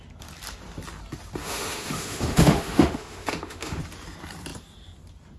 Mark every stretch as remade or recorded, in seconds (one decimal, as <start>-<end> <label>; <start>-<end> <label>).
0.0-1.4 recorded; 1.4-3.8 remade; 3.8-5.4 recorded